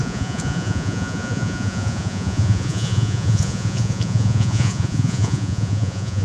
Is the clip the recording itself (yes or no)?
no